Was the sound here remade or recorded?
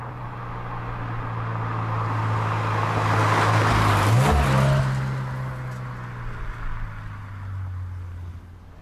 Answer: recorded